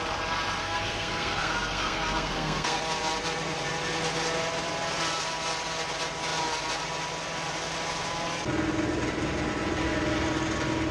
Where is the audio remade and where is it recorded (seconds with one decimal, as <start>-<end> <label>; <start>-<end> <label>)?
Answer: 0.0-0.6 recorded; 0.6-2.8 remade; 2.8-10.9 recorded